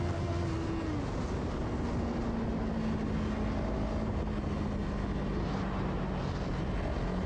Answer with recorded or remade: recorded